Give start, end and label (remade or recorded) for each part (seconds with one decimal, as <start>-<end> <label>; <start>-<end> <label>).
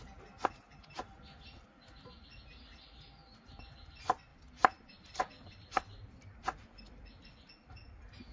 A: 0.0-4.3 recorded; 4.3-7.7 remade; 7.7-8.3 recorded